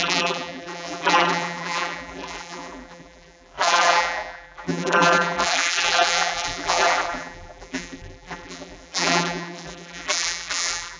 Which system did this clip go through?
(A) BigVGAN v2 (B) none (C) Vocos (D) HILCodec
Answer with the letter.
A